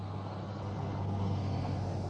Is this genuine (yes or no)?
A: no